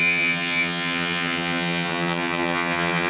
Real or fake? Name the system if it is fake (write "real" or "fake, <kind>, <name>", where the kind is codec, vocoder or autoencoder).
fake, vocoder, HiFi-GAN